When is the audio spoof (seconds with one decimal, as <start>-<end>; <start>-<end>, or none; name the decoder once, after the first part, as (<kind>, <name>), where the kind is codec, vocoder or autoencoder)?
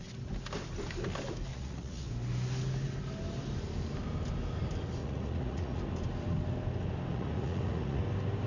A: 1.5-2.1 (vocoder, Vocos); 5.0-5.8; 7.1-8.0